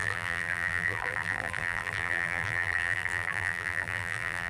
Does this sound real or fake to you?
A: fake